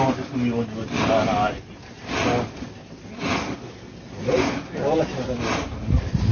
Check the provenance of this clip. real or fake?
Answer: real